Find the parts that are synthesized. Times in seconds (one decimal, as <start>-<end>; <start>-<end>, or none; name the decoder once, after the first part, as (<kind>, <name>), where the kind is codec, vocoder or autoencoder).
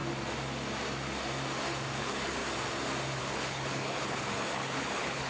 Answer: 2.0-2.4 (codec, HILCodec); 3.2-5.3